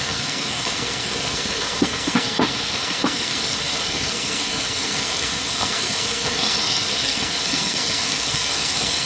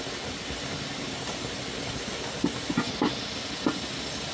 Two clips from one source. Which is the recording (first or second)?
second